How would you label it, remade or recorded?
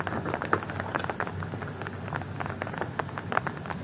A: recorded